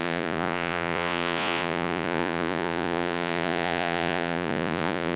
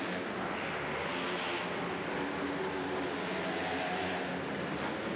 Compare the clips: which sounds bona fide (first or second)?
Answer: second